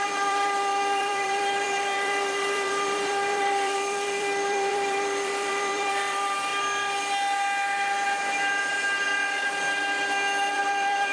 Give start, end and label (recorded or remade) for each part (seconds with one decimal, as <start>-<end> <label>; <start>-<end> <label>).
0.0-6.5 remade; 6.5-10.5 recorded; 10.5-11.1 remade